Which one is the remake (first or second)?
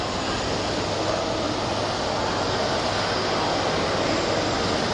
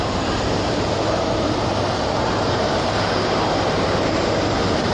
second